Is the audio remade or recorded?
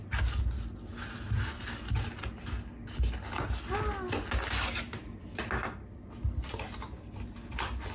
recorded